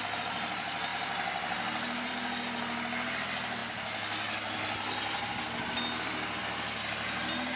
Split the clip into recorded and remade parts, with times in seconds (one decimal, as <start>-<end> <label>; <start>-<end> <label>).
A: 0.0-7.6 recorded